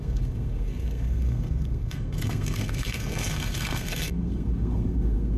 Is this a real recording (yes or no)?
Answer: no